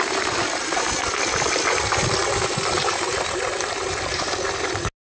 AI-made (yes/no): no